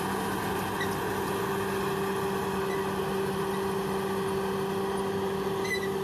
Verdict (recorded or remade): recorded